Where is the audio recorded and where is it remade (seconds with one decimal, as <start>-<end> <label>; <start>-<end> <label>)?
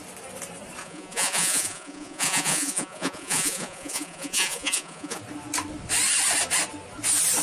0.0-0.8 recorded; 0.8-5.2 remade; 5.2-7.4 recorded